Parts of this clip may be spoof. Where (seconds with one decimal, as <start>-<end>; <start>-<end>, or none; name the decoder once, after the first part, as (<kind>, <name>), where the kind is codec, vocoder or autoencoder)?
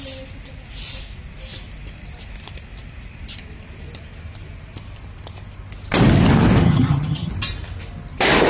6.6-7.3 (vocoder, HiFi-GAN)